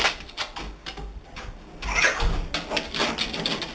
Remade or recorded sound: recorded